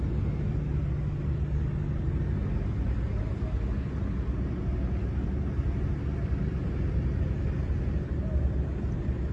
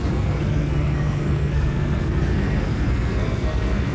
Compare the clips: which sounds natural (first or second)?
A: first